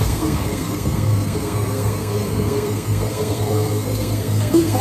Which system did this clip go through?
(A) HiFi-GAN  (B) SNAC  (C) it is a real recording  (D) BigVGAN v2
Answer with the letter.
B